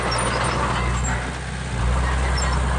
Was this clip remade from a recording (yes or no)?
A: no